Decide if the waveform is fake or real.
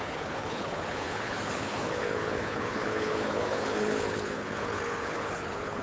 fake